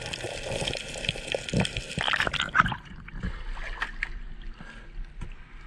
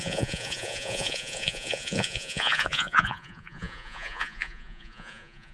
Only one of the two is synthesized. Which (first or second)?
second